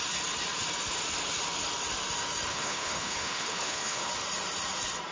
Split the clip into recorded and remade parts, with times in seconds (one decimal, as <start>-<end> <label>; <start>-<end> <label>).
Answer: 0.0-2.5 recorded; 2.5-4.1 remade; 4.1-5.1 recorded

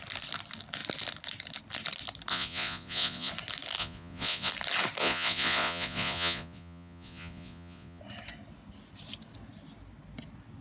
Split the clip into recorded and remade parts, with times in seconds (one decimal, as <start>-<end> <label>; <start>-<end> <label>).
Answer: 0.0-2.3 recorded; 2.3-3.3 remade; 3.3-3.8 recorded; 3.8-4.5 remade; 4.5-5.0 recorded; 5.0-8.0 remade; 8.0-10.6 recorded

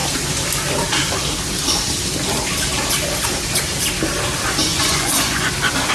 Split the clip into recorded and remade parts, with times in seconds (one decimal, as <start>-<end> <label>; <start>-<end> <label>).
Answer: 0.0-4.7 recorded; 4.7-5.5 remade; 5.5-5.9 recorded

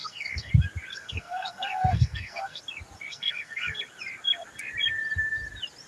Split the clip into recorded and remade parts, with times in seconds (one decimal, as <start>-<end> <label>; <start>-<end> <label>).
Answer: 0.0-0.5 remade; 0.5-0.9 recorded; 0.9-2.6 remade; 2.6-3.1 recorded; 3.1-3.8 remade; 3.8-5.9 recorded

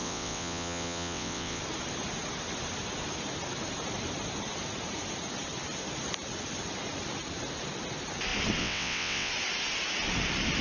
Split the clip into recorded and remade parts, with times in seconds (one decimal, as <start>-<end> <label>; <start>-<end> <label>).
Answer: 0.0-1.6 remade; 1.6-8.6 recorded; 8.6-9.3 remade; 9.3-10.6 recorded

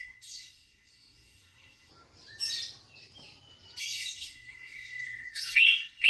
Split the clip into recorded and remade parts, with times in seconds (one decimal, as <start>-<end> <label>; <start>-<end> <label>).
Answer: 0.0-1.9 remade; 1.9-3.8 recorded; 3.8-6.1 remade

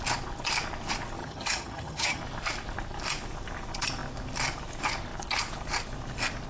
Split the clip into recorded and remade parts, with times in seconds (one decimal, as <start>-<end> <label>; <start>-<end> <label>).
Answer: 0.0-1.2 recorded; 1.2-2.2 remade; 2.2-6.5 recorded